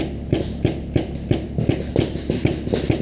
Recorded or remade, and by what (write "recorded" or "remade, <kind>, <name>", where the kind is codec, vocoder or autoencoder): recorded